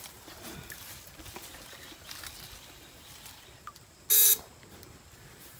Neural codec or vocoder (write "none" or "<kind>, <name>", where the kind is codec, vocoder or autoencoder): none